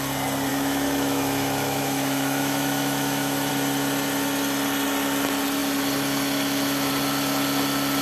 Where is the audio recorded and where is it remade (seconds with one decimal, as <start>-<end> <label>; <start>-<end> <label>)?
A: 0.0-0.5 recorded; 0.5-3.5 remade; 3.5-8.0 recorded